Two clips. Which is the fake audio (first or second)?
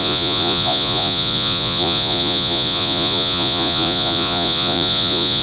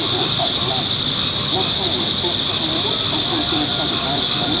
first